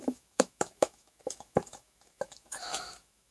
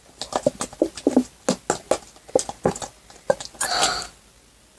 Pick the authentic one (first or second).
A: second